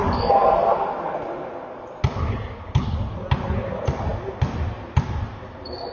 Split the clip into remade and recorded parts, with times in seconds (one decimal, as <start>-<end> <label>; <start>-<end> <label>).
0.0-5.9 recorded